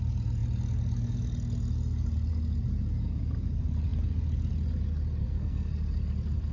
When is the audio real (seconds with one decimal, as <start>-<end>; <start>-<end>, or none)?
0.0-5.2; 5.7-6.5